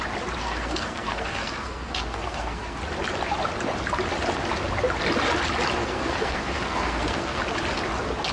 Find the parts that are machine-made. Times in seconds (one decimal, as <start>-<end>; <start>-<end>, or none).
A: 0.4-2.8; 5.8-7.4